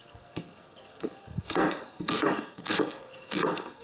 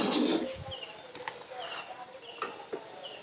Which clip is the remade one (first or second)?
first